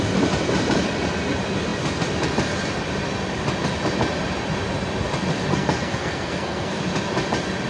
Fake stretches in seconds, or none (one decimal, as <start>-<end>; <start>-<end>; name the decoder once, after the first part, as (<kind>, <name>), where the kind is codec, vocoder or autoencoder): 5.5-6.8 (codec, SNAC)